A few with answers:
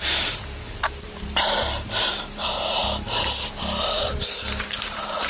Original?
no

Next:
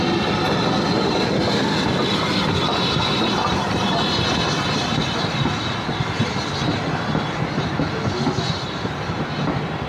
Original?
yes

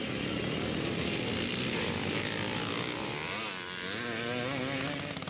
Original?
yes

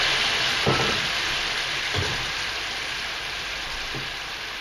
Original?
no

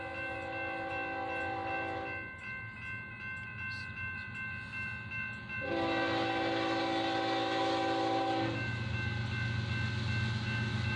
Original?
yes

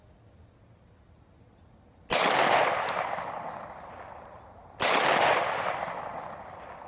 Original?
yes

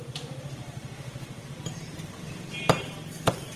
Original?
no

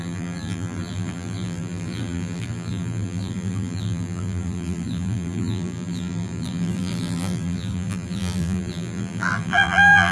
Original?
no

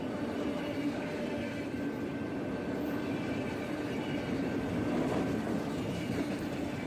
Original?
yes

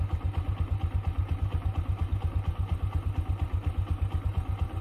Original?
yes